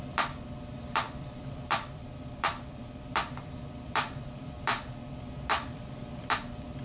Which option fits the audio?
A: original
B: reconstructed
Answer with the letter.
B